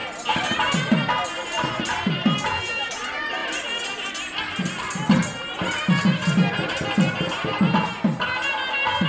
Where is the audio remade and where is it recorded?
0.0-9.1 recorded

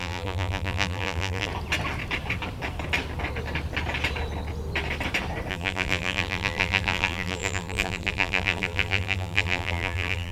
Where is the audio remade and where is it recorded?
0.0-1.5 remade; 1.5-5.5 recorded; 5.5-10.3 remade

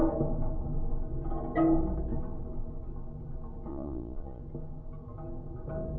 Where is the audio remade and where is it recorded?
0.0-3.7 recorded; 3.7-4.4 remade; 4.4-6.0 recorded

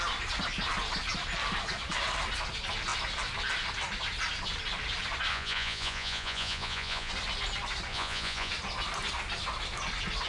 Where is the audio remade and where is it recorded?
0.0-5.3 recorded; 5.3-7.1 remade; 7.1-7.9 recorded; 7.9-8.5 remade; 8.5-10.3 recorded

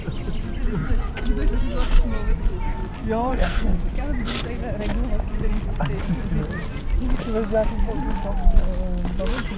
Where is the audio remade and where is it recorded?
0.0-3.3 recorded; 3.3-3.8 remade; 3.8-9.6 recorded

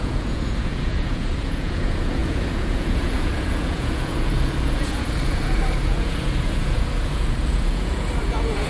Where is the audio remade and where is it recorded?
0.0-8.7 remade